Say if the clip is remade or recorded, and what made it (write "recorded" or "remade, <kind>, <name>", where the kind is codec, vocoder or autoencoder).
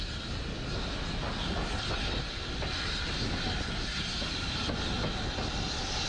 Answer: recorded